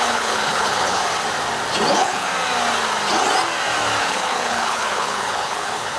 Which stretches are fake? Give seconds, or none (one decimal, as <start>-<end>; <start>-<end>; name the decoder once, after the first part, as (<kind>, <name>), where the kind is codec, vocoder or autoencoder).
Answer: 0.0-1.0 (codec, HILCodec); 1.9-2.3; 4.0-6.0

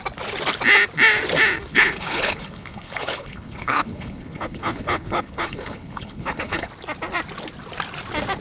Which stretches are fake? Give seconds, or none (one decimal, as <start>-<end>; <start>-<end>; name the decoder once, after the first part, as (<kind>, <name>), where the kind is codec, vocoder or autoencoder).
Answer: 1.7-6.7 (codec, HILCodec)

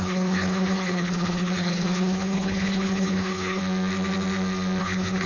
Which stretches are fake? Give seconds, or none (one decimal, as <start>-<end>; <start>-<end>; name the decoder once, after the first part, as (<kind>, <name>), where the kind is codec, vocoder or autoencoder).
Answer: 0.0-3.6 (codec, HILCodec); 4.8-5.3

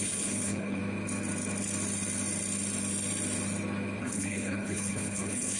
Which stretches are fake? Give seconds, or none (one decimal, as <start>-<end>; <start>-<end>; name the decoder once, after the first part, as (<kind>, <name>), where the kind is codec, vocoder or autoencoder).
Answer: 0.0-0.8 (codec, HILCodec); 4.0-5.6

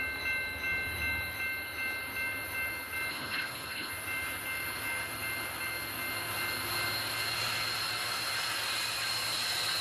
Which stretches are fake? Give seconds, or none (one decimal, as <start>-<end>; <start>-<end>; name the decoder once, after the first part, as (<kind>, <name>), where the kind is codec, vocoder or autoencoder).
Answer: 3.1-3.9 (codec, HILCodec)

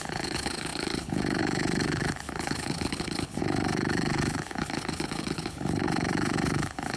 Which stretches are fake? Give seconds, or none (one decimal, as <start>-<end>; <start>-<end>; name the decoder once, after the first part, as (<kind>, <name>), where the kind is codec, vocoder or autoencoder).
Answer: 0.0-7.0 (codec, HILCodec)

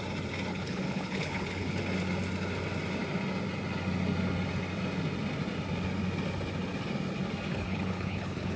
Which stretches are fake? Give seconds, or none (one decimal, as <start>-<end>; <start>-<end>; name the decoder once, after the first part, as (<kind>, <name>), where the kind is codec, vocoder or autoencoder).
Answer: 0.5-1.8 (codec, HILCodec); 7.5-8.6